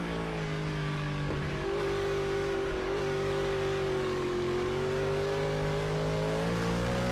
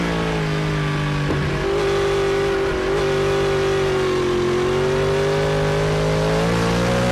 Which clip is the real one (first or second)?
second